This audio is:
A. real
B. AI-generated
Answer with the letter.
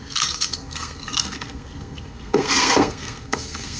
B